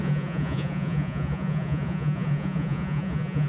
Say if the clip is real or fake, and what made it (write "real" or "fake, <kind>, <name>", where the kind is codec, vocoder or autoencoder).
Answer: fake, vocoder, Vocos